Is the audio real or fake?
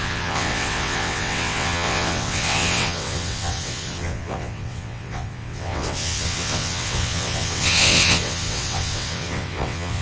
fake